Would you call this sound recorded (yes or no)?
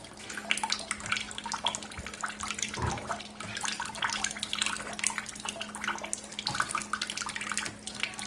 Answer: yes